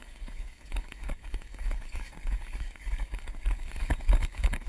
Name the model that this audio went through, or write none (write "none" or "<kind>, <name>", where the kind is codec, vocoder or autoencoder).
codec, DAC